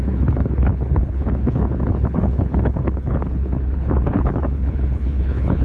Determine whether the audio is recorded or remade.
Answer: remade